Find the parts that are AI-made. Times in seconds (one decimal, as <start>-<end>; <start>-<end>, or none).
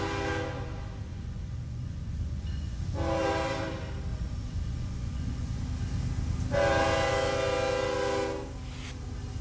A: 1.1-2.8; 4.1-5.6